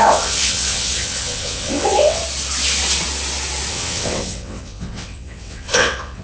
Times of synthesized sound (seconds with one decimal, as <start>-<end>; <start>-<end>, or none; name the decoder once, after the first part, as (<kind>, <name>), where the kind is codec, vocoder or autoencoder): 0.0-2.2 (vocoder, WaveNeXt); 3.7-6.2